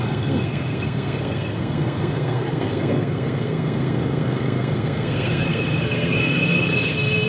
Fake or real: fake